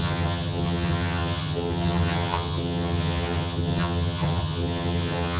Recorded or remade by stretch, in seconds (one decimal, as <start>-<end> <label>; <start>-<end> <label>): 0.0-5.4 remade